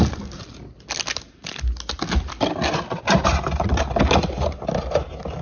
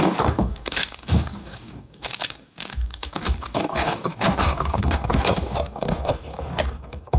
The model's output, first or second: second